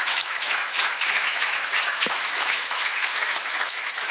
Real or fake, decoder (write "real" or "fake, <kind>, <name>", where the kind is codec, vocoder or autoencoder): fake, autoencoder, DAC-VAE